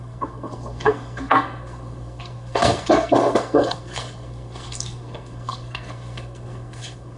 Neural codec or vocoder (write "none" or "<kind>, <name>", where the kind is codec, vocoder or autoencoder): codec, SNAC